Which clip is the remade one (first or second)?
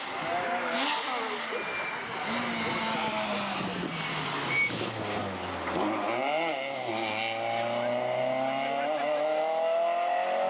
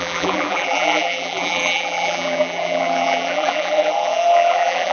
second